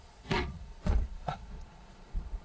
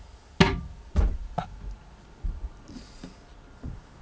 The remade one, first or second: first